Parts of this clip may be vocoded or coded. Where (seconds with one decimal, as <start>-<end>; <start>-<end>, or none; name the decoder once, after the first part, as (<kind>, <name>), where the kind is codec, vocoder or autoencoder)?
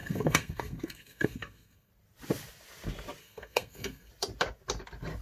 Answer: 0.0-1.9 (codec, SNAC); 3.2-4.1